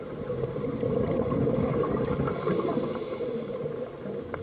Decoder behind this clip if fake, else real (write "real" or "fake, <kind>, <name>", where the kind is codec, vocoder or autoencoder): real